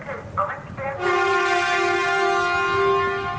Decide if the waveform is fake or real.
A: real